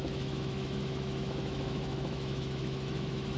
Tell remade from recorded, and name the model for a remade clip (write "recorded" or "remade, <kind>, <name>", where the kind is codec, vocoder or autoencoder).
remade, autoencoder, DAC-VAE